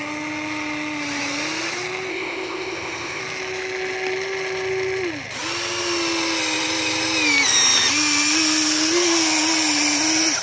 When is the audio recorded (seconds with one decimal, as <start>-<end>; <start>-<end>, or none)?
0.0-2.1; 3.2-10.4